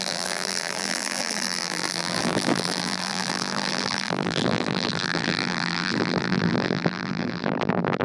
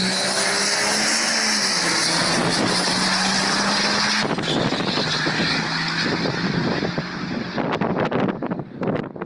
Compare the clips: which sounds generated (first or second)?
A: first